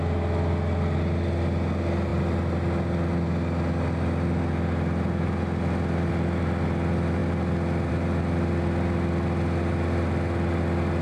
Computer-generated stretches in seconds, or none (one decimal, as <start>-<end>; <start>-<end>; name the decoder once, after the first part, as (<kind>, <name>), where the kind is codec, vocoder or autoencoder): none